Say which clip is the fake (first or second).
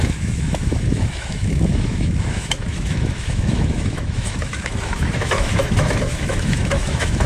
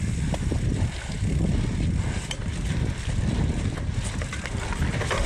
first